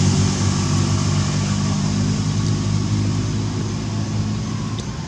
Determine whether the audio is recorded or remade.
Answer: recorded